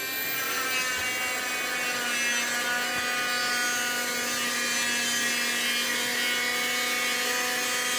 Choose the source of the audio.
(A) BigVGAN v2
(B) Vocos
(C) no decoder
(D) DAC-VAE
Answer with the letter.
C